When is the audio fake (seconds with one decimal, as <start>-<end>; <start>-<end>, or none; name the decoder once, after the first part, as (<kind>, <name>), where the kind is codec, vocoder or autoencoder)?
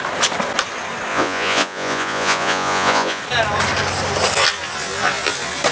1.1-3.2 (vocoder, Vocos)